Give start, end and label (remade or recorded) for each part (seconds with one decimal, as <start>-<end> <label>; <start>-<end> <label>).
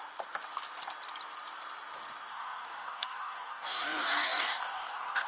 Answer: 0.0-2.3 recorded; 2.3-5.3 remade